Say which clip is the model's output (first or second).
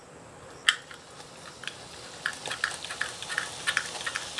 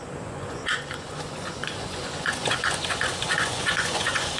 second